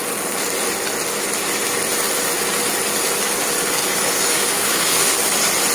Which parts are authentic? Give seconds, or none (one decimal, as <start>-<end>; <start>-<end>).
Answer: 0.0-3.8; 5.2-5.7